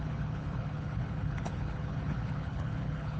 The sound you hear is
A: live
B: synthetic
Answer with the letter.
B